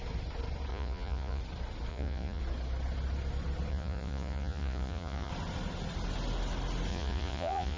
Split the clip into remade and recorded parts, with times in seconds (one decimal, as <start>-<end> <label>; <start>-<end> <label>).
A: 0.0-0.7 recorded; 0.7-1.4 remade; 1.4-1.9 recorded; 1.9-2.4 remade; 2.4-3.7 recorded; 3.7-5.3 remade; 5.3-6.9 recorded; 6.9-7.8 remade